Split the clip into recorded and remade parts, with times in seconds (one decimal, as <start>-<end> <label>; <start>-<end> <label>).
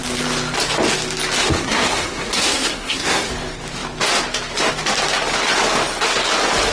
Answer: 0.0-1.4 recorded; 1.4-3.3 remade; 3.3-6.7 recorded